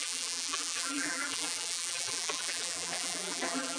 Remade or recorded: remade